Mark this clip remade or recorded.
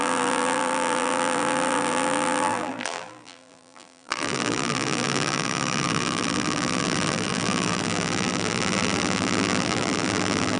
remade